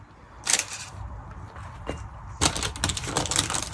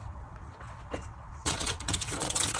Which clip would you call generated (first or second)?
second